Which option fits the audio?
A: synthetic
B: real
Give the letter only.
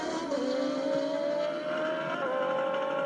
B